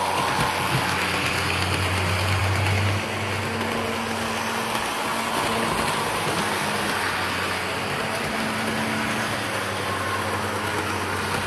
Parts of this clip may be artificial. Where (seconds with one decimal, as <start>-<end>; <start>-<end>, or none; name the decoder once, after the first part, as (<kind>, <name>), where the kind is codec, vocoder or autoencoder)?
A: none

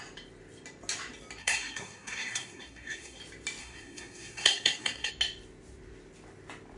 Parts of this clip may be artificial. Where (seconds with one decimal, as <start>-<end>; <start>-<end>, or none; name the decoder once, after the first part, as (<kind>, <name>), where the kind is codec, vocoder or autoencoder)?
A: 1.4-3.2 (codec, SNAC); 3.6-5.1

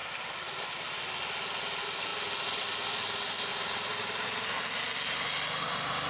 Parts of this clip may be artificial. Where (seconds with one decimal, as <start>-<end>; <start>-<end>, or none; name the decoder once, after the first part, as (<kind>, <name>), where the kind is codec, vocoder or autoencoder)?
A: 3.5-4.6 (vocoder, BigVGAN v2)

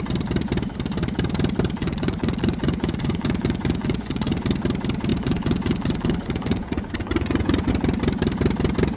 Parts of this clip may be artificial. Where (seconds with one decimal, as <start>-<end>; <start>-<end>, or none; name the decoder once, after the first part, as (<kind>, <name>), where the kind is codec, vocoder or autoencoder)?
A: 1.8-4.4 (vocoder, Vocos); 5.1-7.7

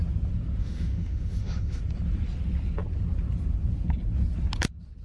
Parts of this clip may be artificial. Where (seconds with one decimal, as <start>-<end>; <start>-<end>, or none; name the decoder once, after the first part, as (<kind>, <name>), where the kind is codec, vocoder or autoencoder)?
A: 0.6-1.8 (autoencoder, DAC-VAE)

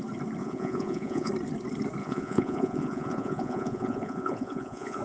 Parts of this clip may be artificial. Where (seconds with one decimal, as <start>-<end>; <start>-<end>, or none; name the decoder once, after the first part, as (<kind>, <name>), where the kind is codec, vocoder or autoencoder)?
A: 0.4-1.3 (vocoder, Vocos); 2.0-5.0

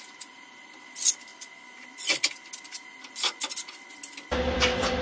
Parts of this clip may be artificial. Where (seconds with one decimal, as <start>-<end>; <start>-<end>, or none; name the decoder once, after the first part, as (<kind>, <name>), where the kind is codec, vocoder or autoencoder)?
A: none

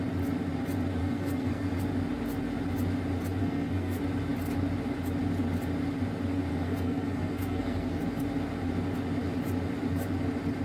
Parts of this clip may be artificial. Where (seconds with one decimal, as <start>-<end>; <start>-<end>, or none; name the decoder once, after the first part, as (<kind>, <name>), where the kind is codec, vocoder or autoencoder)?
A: 1.0-1.8 (codec, SNAC); 3.4-4.0; 6.5-8.0